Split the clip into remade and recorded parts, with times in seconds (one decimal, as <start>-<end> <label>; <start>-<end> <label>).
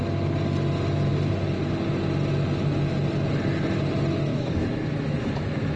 0.0-4.3 recorded; 4.3-5.8 remade